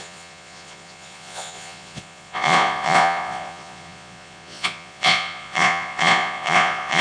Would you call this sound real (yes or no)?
no